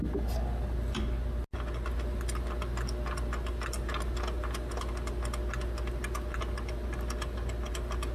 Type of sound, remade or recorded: recorded